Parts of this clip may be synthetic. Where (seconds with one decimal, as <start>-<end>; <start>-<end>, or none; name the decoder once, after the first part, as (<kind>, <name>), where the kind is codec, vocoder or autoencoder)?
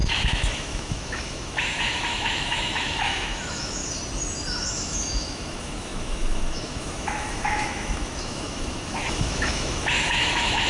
0.0-3.8 (autoencoder, DAC-VAE); 4.7-10.7